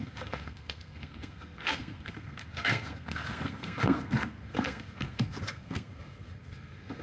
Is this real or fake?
fake